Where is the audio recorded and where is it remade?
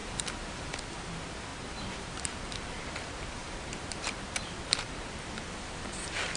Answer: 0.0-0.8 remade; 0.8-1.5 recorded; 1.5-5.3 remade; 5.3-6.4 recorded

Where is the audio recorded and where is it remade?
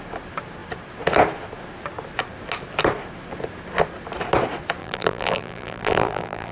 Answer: 0.0-4.8 recorded; 4.8-6.5 remade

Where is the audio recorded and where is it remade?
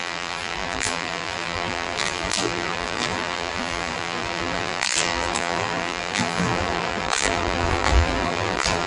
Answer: 0.0-8.9 remade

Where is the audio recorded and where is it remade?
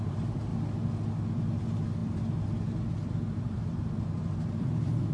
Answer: 0.0-0.5 remade; 0.5-1.6 recorded; 1.6-5.1 remade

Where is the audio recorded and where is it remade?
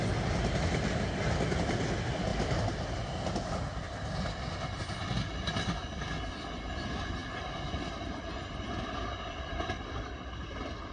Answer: 0.0-2.3 recorded; 2.3-6.2 remade; 6.2-7.2 recorded; 7.2-10.9 remade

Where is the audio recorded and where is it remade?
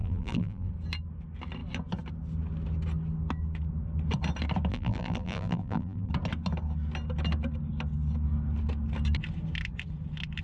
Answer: 0.0-0.7 remade; 0.7-4.7 recorded; 4.7-6.1 remade; 6.1-10.4 recorded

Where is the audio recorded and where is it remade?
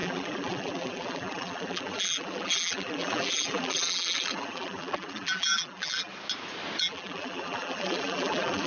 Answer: 0.0-6.1 remade; 6.1-6.8 recorded; 6.8-8.7 remade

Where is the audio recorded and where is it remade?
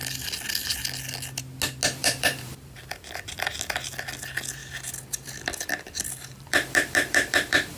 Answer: 0.0-2.0 recorded; 2.0-2.9 remade; 2.9-4.6 recorded; 4.6-7.8 remade